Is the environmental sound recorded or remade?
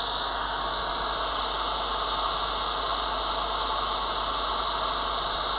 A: recorded